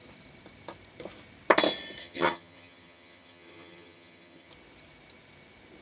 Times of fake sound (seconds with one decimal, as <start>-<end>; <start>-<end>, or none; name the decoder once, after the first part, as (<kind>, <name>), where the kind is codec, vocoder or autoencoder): 2.0-4.5 (vocoder, HiFi-GAN)